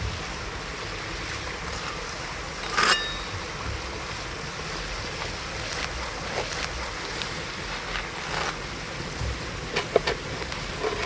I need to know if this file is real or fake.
real